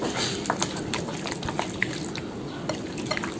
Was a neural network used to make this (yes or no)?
no